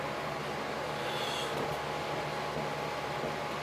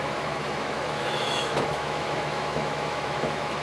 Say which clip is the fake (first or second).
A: second